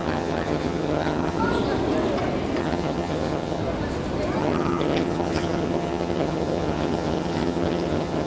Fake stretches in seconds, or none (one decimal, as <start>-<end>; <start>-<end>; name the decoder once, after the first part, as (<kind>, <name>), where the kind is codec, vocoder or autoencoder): 0.0-1.4 (vocoder, HiFi-GAN); 2.6-3.6; 4.4-8.3